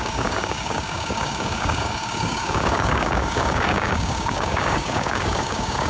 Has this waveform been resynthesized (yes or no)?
yes